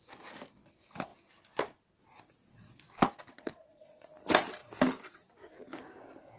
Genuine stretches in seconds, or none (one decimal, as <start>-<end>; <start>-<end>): 0.0-3.3; 4.1-6.4